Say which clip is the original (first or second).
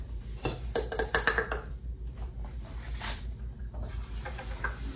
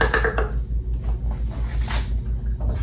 second